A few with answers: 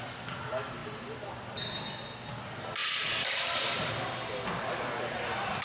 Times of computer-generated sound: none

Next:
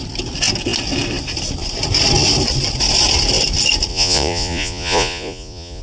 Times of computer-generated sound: 3.9-5.8 (vocoder, Vocos)

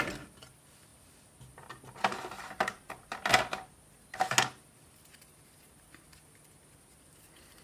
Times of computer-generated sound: none

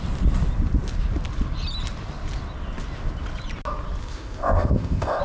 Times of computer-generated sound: 4.0-5.2 (codec, ZipCodec)

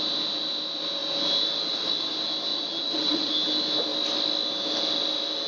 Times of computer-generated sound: 2.5-3.3 (vocoder, Vocos)